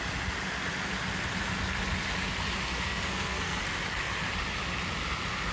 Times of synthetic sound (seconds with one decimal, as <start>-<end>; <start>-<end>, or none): 2.7-3.6